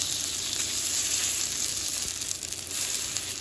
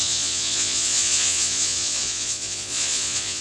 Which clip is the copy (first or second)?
second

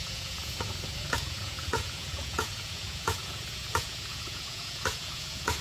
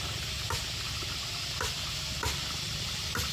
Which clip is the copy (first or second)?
first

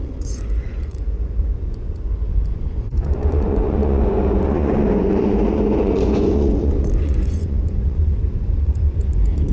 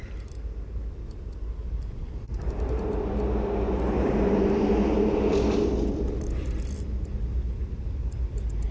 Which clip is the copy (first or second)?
first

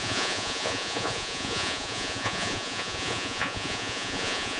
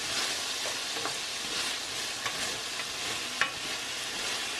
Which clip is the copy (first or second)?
first